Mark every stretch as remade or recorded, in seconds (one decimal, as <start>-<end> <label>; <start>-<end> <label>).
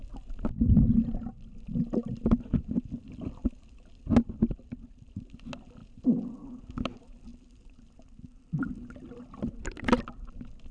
0.0-10.7 recorded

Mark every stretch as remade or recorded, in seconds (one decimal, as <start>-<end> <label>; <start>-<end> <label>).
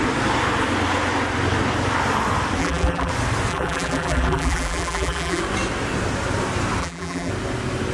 0.0-2.6 recorded; 2.6-3.1 remade; 3.1-3.5 recorded; 3.5-5.4 remade; 5.4-6.8 recorded; 6.8-7.3 remade; 7.3-7.9 recorded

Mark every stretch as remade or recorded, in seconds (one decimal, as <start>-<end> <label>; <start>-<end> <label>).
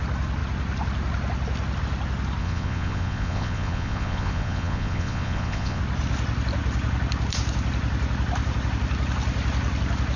0.0-2.4 recorded; 2.4-5.8 remade; 5.8-10.2 recorded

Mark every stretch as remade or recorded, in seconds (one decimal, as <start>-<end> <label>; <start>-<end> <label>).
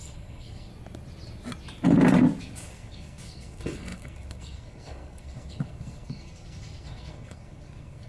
0.0-0.7 remade; 0.7-2.4 recorded; 2.4-8.1 remade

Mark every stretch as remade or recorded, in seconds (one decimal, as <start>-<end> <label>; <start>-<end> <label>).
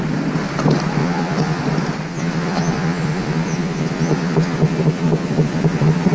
0.0-1.0 recorded; 1.0-1.6 remade; 1.6-2.1 recorded; 2.1-6.1 remade